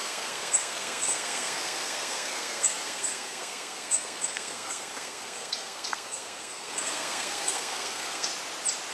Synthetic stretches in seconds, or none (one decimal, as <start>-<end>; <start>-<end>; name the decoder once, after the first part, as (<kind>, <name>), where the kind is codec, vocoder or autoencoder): 0.0-8.3 (codec, SNAC)